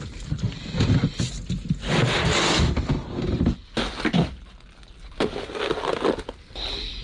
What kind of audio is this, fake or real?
real